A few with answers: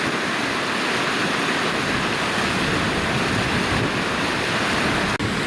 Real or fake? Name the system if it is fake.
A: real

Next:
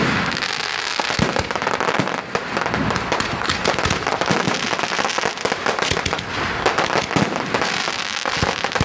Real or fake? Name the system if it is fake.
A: real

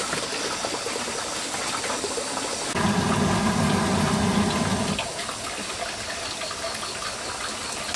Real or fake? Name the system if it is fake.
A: real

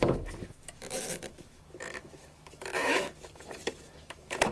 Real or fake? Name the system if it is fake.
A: fake, autoencoder, DAC-VAE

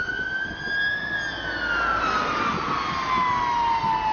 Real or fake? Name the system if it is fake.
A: real